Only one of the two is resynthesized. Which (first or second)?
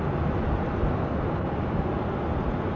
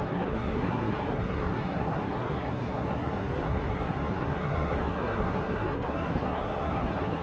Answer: second